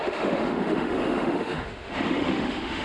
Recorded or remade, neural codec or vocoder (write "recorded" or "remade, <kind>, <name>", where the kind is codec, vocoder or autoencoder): remade, autoencoder, DAC-VAE